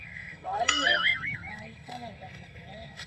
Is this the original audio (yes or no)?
no